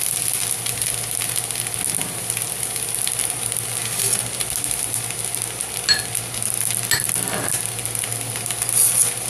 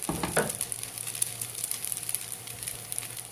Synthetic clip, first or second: second